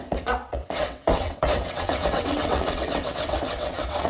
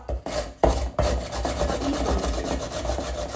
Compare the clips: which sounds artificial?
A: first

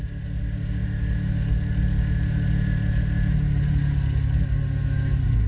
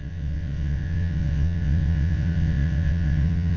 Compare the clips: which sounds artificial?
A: second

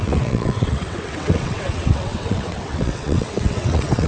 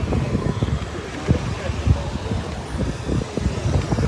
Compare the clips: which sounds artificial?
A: first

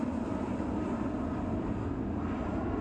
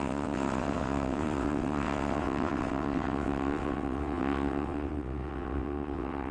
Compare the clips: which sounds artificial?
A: second